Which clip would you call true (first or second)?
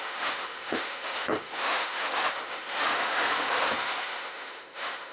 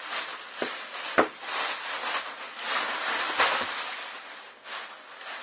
second